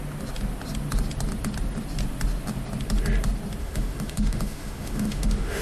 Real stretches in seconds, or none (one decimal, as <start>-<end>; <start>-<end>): 0.0-3.6